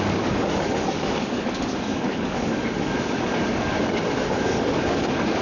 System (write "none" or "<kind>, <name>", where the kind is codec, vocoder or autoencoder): codec, DAC